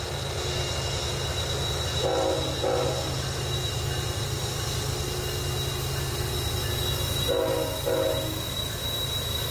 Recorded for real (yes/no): yes